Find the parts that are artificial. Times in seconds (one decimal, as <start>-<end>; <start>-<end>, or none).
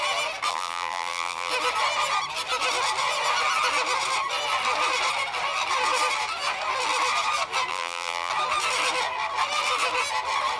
0.5-1.5; 7.7-8.3